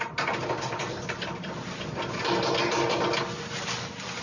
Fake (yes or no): no